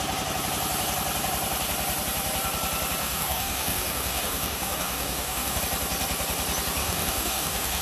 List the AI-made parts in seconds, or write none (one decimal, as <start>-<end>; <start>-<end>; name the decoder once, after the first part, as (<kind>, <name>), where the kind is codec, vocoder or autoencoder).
3.0-5.6 (codec, DAC); 6.8-7.8